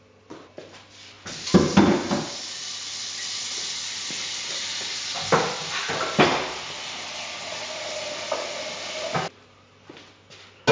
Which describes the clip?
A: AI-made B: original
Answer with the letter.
B